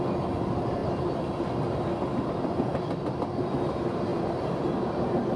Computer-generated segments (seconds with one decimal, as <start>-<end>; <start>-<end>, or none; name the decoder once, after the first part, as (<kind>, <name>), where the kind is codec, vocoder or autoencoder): none